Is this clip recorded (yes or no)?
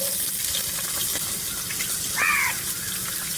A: yes